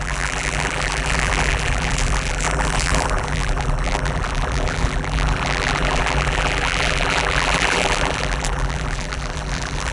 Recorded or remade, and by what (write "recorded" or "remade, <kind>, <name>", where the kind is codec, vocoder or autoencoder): remade, vocoder, BigVGAN v2